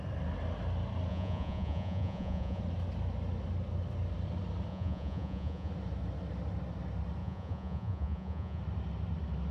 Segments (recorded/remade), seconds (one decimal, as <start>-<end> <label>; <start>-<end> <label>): 0.0-1.1 recorded; 1.1-2.6 remade; 2.6-4.7 recorded; 4.7-5.7 remade; 5.7-7.2 recorded; 7.2-8.6 remade; 8.6-9.5 recorded